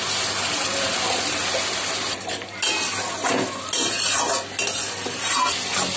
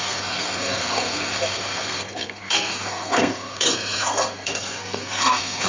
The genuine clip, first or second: first